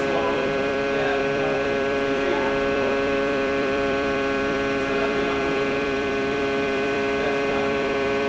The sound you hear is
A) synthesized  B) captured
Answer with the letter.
A